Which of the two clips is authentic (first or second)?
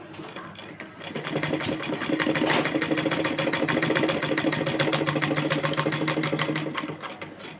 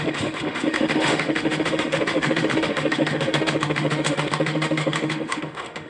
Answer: first